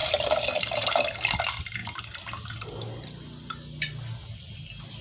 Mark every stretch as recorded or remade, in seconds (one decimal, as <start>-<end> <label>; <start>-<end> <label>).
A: 0.0-5.0 recorded